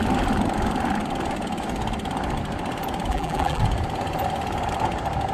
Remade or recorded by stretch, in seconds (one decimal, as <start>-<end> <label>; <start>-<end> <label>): 0.0-3.1 recorded; 3.1-3.6 remade; 3.6-5.3 recorded